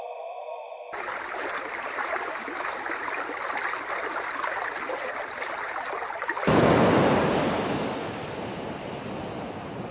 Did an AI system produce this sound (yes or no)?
no